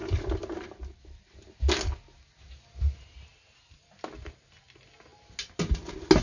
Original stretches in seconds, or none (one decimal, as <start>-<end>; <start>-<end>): 0.0-6.2